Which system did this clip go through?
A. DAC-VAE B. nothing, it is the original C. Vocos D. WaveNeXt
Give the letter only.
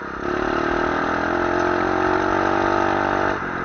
B